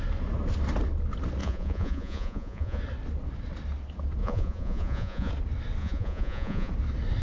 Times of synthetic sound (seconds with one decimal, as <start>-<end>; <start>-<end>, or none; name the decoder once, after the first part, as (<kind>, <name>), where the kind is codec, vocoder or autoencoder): 1.4-2.8 (vocoder, Vocos); 4.2-5.3; 5.8-6.7